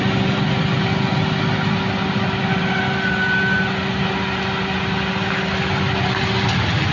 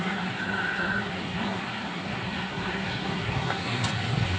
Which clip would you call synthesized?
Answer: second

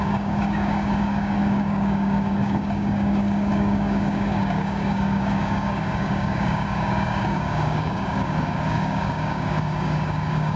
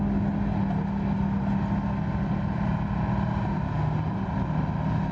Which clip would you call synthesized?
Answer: first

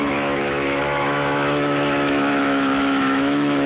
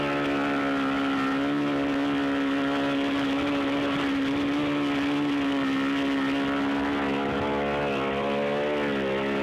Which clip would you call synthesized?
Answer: first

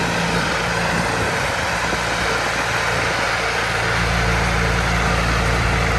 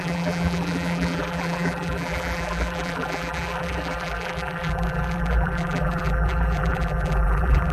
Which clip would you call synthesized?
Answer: second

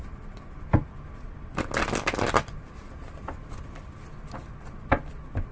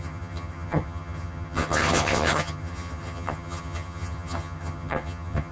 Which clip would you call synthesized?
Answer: second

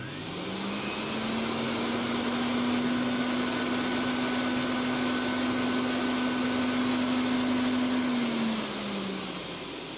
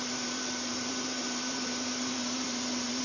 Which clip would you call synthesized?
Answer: second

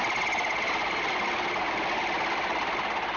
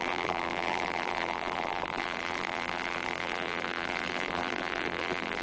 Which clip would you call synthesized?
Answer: second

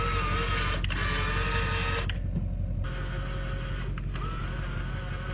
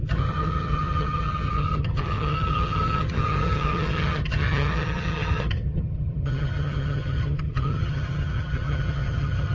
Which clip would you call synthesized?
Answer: second